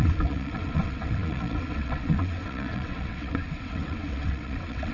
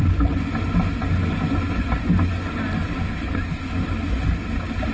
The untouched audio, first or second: second